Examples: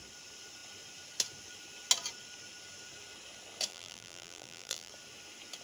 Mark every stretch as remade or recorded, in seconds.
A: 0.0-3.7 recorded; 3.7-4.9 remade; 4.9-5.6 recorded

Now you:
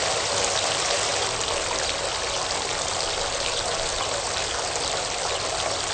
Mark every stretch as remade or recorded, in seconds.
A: 0.0-5.9 recorded

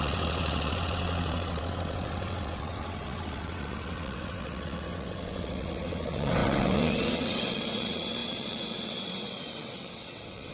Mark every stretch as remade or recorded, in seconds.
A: 0.0-10.5 remade

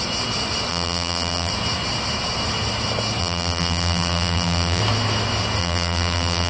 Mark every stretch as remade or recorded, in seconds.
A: 0.0-0.7 recorded; 0.7-1.5 remade; 1.5-3.2 recorded; 3.2-4.8 remade; 4.8-5.6 recorded; 5.6-6.5 remade

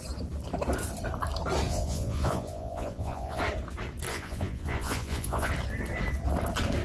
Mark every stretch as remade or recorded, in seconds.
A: 0.0-1.7 recorded; 1.7-3.4 remade; 3.4-4.1 recorded; 4.1-5.5 remade; 5.5-6.8 recorded

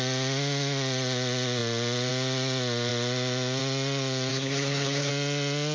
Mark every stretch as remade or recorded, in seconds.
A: 0.0-4.3 recorded; 4.3-5.1 remade; 5.1-5.7 recorded

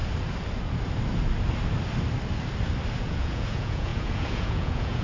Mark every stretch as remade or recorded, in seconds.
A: 0.0-3.0 recorded; 3.0-5.0 remade

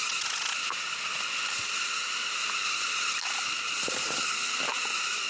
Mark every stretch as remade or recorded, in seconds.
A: 0.0-5.3 recorded